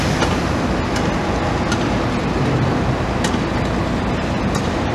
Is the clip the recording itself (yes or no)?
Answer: yes